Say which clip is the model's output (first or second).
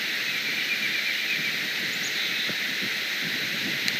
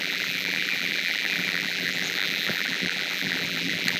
second